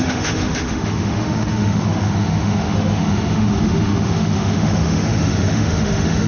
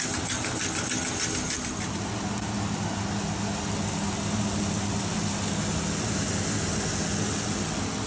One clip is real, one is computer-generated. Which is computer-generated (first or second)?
first